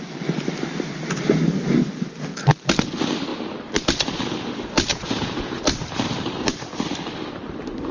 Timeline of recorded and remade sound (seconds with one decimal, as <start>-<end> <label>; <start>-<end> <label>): 0.0-4.9 recorded; 4.9-5.6 remade; 5.6-7.9 recorded